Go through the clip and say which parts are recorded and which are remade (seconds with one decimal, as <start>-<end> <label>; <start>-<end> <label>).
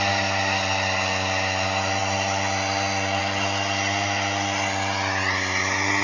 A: 0.0-6.0 recorded